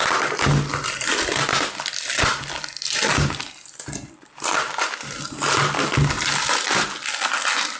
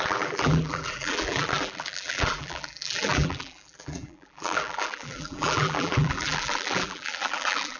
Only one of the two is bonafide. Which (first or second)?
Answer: first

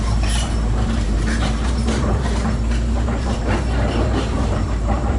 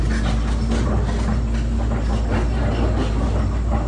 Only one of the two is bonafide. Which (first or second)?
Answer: second